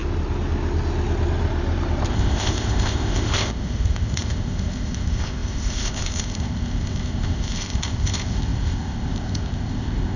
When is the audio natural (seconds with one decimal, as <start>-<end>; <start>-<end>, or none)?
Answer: 0.0-2.1